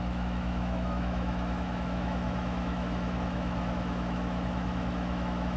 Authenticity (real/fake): fake